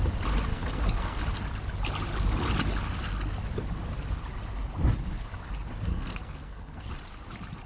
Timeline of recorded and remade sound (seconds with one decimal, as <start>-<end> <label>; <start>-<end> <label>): 0.0-0.5 recorded; 0.5-1.2 remade; 1.2-5.9 recorded; 5.9-6.9 remade; 6.9-7.7 recorded